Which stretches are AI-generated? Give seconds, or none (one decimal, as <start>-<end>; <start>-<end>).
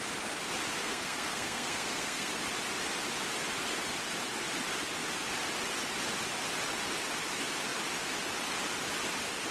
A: 0.8-2.3